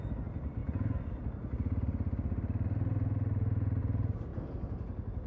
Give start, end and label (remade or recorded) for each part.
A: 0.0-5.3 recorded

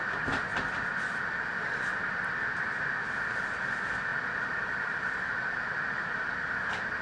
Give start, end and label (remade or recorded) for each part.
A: 0.0-0.5 recorded; 0.5-3.0 remade; 3.0-7.0 recorded